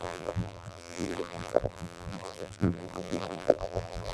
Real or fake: fake